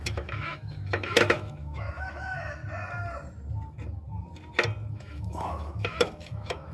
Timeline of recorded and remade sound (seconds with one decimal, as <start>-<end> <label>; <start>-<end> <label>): 0.0-2.6 remade; 2.6-4.9 recorded; 4.9-6.7 remade